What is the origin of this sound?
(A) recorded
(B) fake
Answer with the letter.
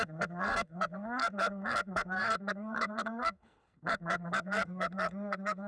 B